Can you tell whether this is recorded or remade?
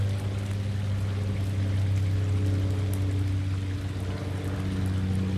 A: recorded